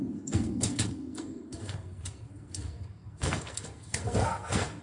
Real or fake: fake